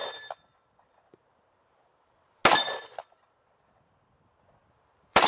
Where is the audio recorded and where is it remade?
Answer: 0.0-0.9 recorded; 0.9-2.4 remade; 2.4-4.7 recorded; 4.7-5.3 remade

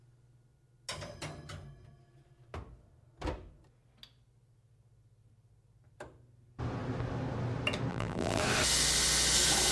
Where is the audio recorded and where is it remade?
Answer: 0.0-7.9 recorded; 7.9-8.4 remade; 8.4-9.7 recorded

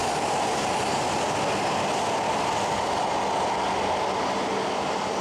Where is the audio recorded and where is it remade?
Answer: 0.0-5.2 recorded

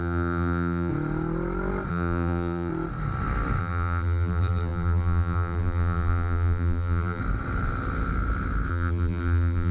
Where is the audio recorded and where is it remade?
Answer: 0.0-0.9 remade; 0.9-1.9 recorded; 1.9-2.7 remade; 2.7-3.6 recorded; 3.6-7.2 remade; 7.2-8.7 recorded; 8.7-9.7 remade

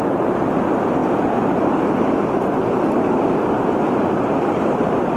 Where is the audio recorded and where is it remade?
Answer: 0.0-5.2 recorded

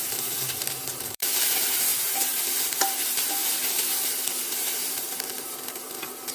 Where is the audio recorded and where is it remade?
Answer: 0.0-3.4 remade; 3.4-4.4 recorded; 4.4-6.3 remade

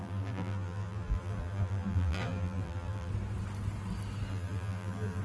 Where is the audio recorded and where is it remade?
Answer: 0.0-3.1 remade; 3.1-4.3 recorded; 4.3-5.2 remade